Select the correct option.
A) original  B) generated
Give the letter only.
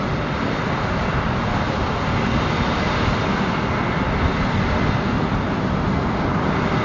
A